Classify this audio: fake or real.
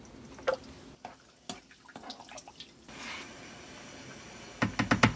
real